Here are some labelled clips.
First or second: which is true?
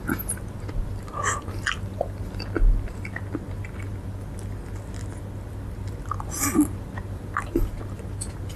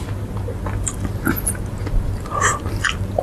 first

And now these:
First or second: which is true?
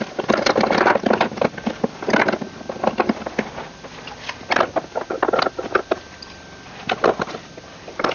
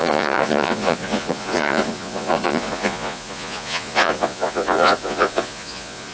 first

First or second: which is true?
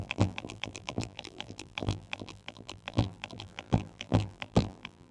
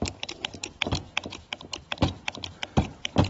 second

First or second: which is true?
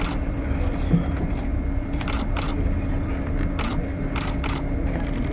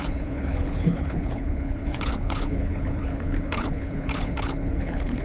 first